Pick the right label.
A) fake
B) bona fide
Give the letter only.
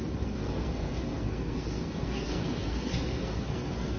A